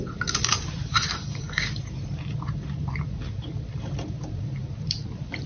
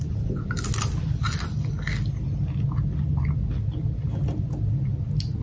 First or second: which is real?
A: second